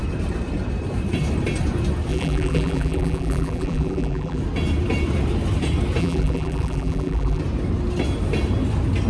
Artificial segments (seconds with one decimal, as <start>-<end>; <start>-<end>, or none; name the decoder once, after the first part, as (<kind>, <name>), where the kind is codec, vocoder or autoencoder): 2.1-4.4 (vocoder, BigVGAN v2); 6.0-7.4